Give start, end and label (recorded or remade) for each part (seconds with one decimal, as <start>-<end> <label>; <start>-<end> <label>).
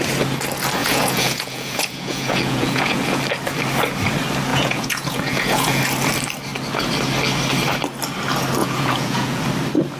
0.0-0.8 recorded; 0.8-3.2 remade; 3.2-4.5 recorded; 4.5-5.8 remade; 5.8-8.6 recorded; 8.6-9.4 remade; 9.4-10.0 recorded